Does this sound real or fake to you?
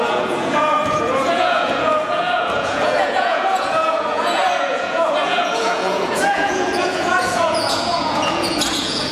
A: fake